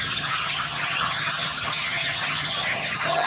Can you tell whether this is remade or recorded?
remade